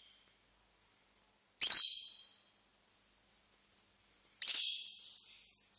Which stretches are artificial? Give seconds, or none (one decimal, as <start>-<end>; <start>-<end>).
2.7-5.2